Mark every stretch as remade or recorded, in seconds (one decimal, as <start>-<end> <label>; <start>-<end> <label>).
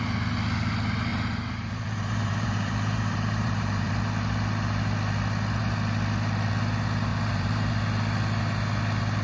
0.0-1.1 recorded; 1.1-3.9 remade; 3.9-7.1 recorded; 7.1-7.7 remade; 7.7-9.2 recorded